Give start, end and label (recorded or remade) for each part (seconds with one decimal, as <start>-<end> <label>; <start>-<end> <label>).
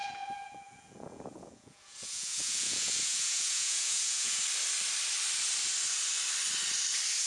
0.0-4.4 remade; 4.4-7.3 recorded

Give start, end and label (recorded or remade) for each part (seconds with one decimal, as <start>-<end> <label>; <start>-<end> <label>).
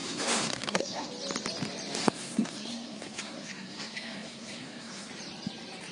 0.0-1.1 remade; 1.1-2.0 recorded; 2.0-5.1 remade; 5.1-5.9 recorded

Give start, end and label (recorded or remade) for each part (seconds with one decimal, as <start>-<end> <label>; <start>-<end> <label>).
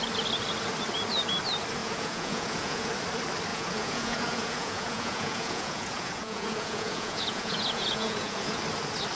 0.0-1.8 recorded; 1.8-2.9 remade; 2.9-3.5 recorded; 3.5-8.6 remade; 8.6-9.2 recorded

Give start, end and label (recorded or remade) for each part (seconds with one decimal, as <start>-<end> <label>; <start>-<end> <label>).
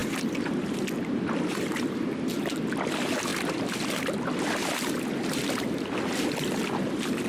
0.0-0.8 remade; 0.8-7.3 recorded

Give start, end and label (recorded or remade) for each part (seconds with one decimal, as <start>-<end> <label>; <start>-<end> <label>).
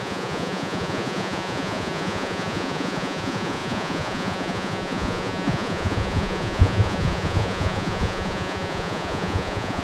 0.0-9.8 remade